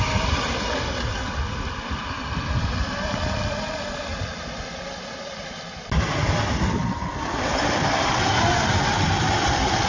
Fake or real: real